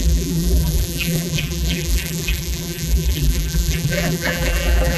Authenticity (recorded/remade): remade